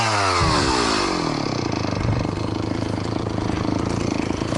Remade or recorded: recorded